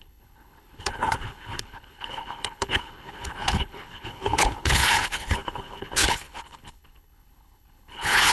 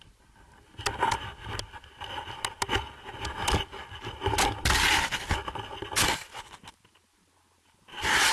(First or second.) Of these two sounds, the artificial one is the first